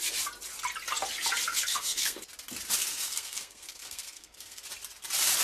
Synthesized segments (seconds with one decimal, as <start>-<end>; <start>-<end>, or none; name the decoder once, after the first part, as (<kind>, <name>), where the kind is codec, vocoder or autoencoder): 1.5-2.2 (codec, SNAC); 2.8-4.6